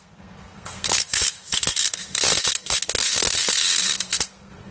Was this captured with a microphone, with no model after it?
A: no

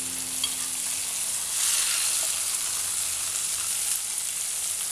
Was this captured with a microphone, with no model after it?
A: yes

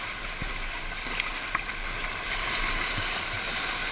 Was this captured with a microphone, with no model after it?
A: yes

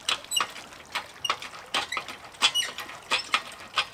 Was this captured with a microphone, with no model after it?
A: yes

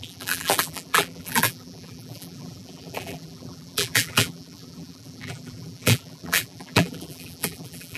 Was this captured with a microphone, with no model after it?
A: no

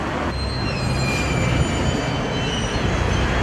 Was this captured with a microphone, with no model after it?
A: yes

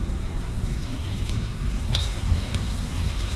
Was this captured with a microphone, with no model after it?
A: no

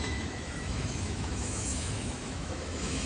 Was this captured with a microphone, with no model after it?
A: no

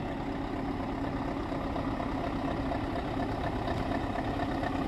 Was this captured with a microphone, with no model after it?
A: yes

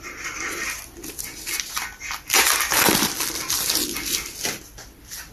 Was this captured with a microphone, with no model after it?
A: yes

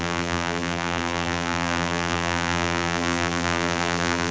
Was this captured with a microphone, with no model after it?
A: no